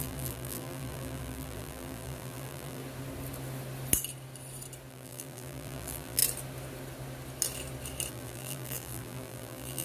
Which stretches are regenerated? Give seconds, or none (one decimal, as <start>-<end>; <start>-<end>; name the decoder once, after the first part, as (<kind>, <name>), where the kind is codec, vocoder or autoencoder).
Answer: 0.0-2.8 (vocoder, BigVGAN v2); 4.9-6.2; 8.1-9.8